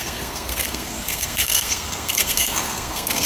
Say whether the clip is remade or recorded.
remade